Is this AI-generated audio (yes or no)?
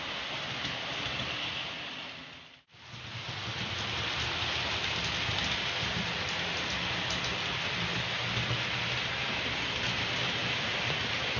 no